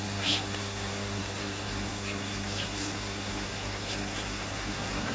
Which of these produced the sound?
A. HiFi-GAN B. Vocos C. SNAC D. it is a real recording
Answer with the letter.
C